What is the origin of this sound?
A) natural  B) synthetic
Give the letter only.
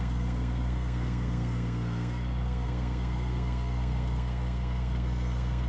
B